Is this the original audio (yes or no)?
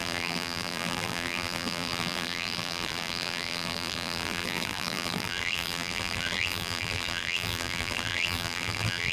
no